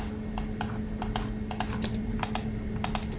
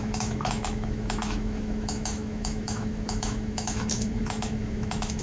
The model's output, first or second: second